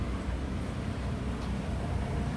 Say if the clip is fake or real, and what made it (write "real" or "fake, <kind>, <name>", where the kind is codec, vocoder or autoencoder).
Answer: real